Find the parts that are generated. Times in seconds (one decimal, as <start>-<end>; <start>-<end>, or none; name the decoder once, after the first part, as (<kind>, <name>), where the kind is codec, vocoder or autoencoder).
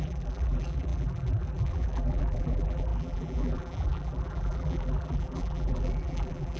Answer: 0.0-6.6 (vocoder, BigVGAN v2)